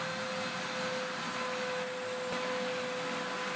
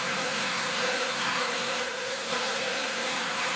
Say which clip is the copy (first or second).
second